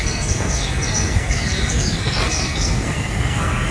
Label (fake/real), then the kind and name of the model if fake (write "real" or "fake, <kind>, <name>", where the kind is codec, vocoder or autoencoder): fake, codec, SNAC